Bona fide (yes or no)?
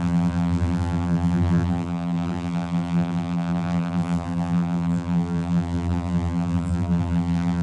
no